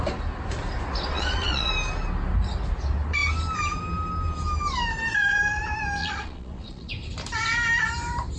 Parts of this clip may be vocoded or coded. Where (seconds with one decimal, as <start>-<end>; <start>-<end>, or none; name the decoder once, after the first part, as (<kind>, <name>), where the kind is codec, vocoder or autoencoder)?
1.1-1.7 (vocoder, Vocos); 6.0-6.9